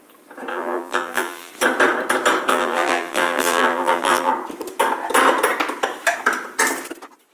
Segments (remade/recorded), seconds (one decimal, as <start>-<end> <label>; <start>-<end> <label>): 0.0-0.5 recorded; 0.5-1.5 remade; 1.5-2.5 recorded; 2.5-4.3 remade; 4.3-7.3 recorded